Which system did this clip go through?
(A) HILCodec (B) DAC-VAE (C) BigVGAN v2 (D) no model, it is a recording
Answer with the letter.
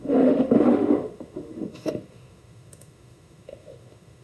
B